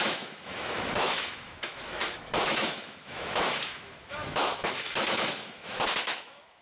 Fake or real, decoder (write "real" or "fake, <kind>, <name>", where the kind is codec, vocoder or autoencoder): fake, autoencoder, DAC-VAE